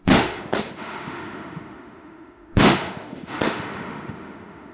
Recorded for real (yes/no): no